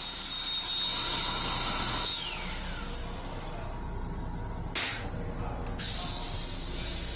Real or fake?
real